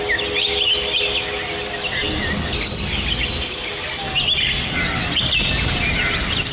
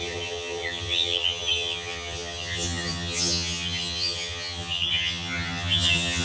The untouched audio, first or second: first